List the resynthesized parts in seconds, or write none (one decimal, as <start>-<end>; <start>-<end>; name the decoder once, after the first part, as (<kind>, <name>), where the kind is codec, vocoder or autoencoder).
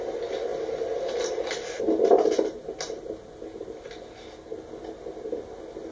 none